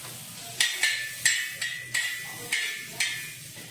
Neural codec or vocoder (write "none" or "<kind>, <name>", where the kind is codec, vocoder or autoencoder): none